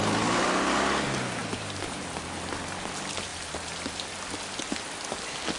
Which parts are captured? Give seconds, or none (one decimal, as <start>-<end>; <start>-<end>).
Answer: 0.0-1.4; 2.2-5.6